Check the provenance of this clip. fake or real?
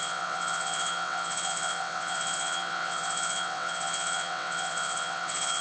fake